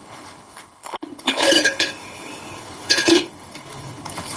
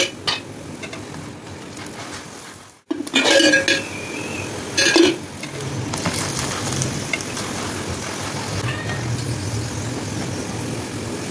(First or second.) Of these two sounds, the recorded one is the second